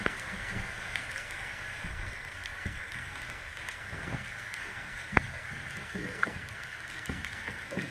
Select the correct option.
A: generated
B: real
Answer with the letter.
A